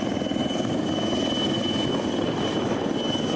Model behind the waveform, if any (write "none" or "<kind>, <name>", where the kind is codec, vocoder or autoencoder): none